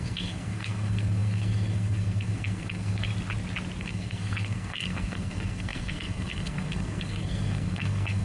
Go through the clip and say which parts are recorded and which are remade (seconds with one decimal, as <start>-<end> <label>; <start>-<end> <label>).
0.0-3.1 remade; 3.1-3.8 recorded; 3.8-8.2 remade